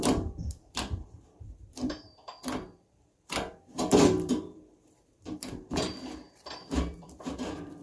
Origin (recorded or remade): remade